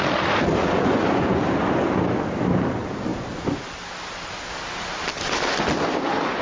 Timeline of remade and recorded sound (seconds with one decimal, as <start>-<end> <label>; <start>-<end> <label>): 0.0-0.6 recorded; 0.6-1.4 remade; 1.4-6.4 recorded